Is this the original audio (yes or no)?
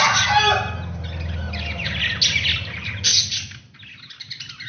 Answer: yes